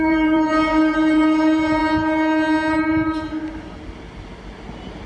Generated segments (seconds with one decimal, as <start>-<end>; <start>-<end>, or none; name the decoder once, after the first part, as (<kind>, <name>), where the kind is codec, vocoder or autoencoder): 0.0-1.8 (vocoder, BigVGAN v2)